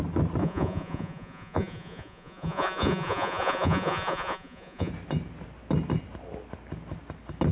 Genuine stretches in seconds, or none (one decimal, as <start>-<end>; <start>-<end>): 0.0-0.4; 4.9-7.5